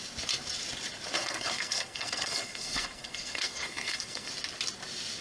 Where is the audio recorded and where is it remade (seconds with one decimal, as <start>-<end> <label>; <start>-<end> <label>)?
0.0-1.2 recorded; 1.2-4.3 remade; 4.3-5.2 recorded